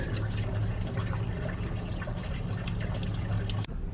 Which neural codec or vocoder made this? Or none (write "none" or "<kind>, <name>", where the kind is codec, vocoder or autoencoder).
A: none